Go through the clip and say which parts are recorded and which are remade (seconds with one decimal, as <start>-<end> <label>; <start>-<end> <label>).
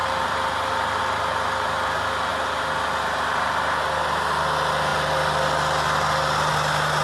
0.0-7.0 recorded